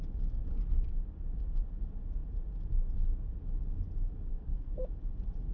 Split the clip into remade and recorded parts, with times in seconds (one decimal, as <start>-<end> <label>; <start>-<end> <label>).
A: 0.0-4.3 recorded; 4.3-4.8 remade; 4.8-5.5 recorded